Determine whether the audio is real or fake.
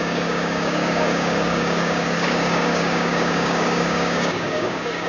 fake